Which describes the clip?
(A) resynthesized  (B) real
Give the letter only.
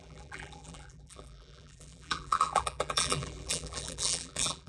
A